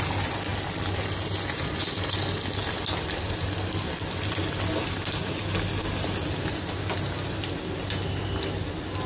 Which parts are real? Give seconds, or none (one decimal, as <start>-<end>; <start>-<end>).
0.0-9.1